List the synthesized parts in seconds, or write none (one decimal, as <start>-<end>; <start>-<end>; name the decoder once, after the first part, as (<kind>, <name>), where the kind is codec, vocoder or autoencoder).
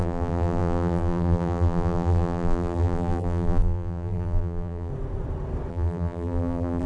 0.0-4.9 (vocoder, BigVGAN v2); 5.7-6.9